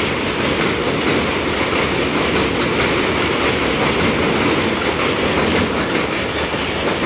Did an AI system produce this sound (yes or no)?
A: no